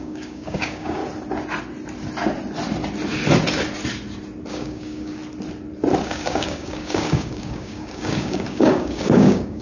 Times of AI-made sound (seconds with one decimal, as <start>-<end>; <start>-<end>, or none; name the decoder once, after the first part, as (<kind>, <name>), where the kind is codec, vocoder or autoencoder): 0.0-1.0 (codec, DAC); 4.5-5.2; 6.0-9.6